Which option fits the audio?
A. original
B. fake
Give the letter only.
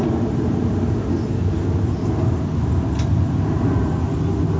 A